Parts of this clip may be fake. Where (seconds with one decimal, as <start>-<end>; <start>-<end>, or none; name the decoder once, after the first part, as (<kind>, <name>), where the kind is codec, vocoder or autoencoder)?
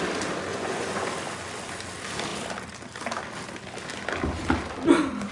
0.5-1.1 (vocoder, Vocos)